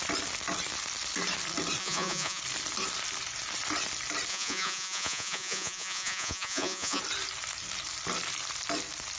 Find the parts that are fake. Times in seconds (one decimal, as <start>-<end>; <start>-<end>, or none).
1.8-2.4; 4.3-7.0